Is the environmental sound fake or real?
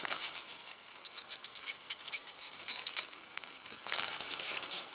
fake